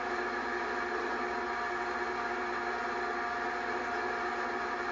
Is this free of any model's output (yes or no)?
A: yes